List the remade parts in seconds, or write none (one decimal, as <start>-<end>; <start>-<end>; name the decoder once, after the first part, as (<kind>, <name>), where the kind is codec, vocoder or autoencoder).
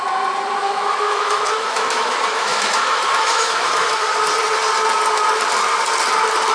0.6-4.1 (autoencoder, DAC-VAE)